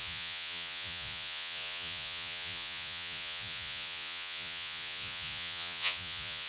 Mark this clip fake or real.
fake